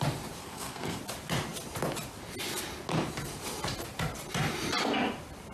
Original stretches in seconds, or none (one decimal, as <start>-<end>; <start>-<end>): 0.0-0.4; 1.0-5.5